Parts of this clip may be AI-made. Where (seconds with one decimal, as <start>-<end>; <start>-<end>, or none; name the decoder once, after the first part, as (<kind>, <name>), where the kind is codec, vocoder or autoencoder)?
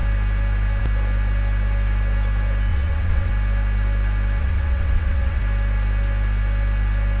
2.7-3.3 (vocoder, WaveNeXt); 4.4-5.4